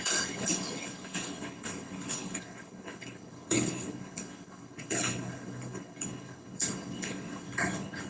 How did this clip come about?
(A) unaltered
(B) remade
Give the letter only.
B